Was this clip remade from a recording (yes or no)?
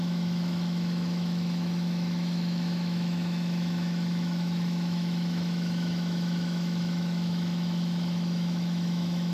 yes